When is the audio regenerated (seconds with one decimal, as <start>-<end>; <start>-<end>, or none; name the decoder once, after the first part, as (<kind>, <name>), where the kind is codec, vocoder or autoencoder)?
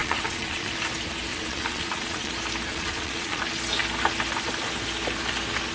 0.0-0.7 (vocoder, Vocos); 1.3-2.3; 2.7-3.4